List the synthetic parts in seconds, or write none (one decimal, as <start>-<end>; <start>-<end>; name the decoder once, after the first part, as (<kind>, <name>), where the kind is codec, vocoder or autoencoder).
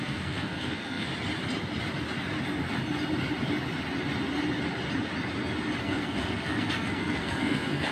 0.0-1.1 (codec, SNAC); 5.8-7.9